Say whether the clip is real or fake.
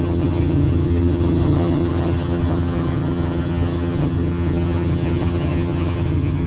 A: fake